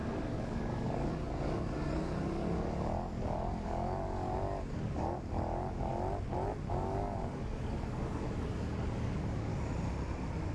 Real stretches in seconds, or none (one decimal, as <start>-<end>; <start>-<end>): 5.9-6.7; 9.5-10.5